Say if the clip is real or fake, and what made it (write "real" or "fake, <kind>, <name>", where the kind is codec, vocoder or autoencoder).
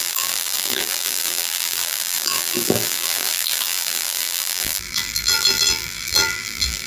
fake, vocoder, BigVGAN v2